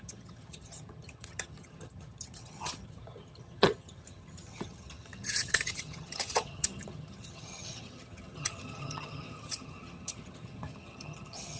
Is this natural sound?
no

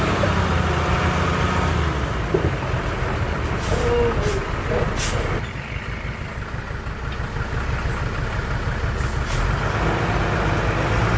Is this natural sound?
yes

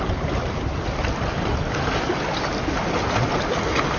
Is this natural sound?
yes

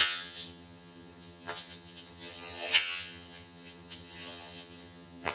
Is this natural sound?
no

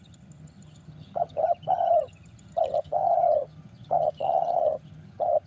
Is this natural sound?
no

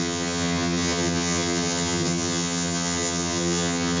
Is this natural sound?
no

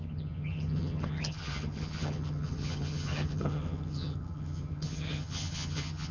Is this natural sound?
no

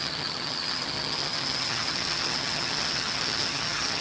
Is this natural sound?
no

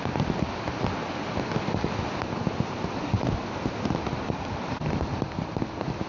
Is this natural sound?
yes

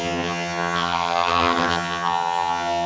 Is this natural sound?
no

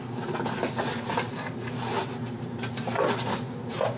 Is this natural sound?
yes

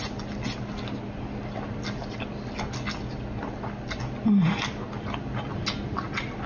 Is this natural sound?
yes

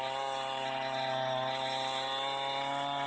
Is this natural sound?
yes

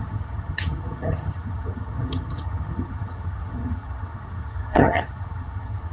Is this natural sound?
no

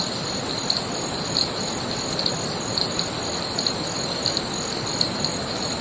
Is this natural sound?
yes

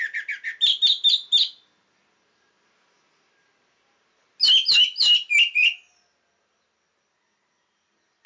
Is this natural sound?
yes